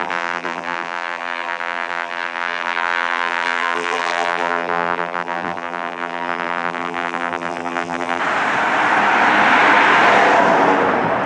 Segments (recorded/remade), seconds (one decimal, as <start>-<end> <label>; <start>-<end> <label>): 0.0-8.2 remade; 8.2-11.3 recorded